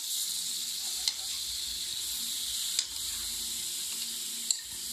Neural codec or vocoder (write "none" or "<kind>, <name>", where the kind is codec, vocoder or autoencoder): none